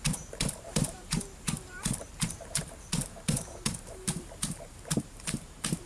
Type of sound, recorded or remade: remade